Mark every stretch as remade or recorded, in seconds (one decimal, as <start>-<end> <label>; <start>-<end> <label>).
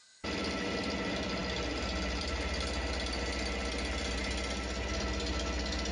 0.0-5.9 recorded